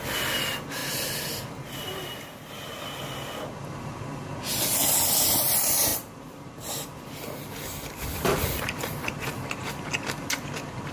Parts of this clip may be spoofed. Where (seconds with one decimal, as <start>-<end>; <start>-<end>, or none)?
5.9-6.7; 8.1-9.8